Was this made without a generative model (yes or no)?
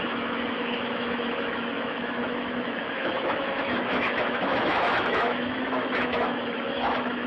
no